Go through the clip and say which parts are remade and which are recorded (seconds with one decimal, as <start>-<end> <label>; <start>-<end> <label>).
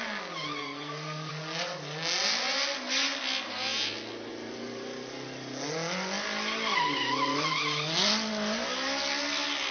0.0-0.6 recorded; 0.6-1.3 remade; 1.3-9.7 recorded